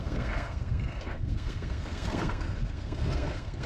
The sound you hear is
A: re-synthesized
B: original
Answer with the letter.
A